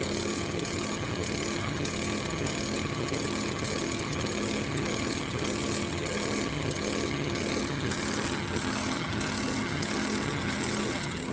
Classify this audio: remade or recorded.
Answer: remade